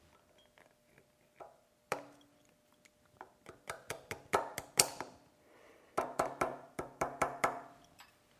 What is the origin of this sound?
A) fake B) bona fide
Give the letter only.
B